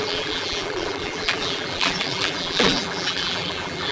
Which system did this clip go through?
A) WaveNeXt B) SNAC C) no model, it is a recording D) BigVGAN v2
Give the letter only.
D